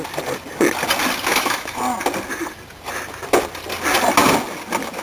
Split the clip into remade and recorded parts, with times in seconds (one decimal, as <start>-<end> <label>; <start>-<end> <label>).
0.0-1.3 recorded; 1.3-1.8 remade; 1.8-5.0 recorded